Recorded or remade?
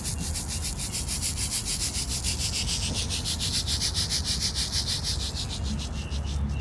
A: recorded